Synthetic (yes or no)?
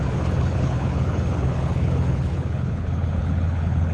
yes